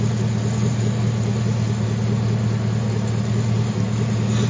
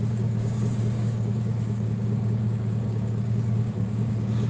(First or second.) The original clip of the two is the first